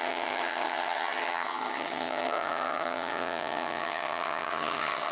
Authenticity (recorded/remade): remade